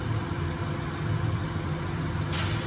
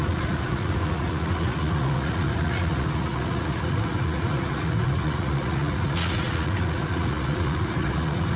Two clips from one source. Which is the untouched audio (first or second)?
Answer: first